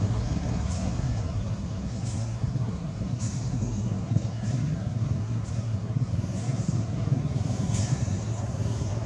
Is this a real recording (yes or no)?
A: no